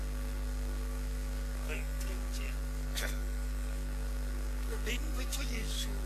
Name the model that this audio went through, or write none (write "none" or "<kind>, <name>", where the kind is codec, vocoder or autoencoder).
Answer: codec, SNAC